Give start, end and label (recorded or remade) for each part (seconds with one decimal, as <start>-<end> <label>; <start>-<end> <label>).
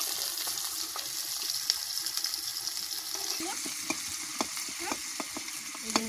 0.0-2.5 remade; 2.5-3.6 recorded; 3.6-4.3 remade; 4.3-4.8 recorded; 4.8-6.1 remade